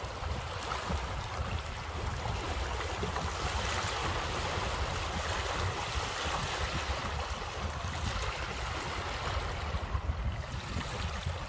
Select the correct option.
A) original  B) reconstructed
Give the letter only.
A